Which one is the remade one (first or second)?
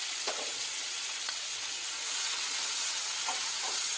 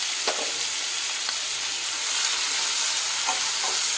first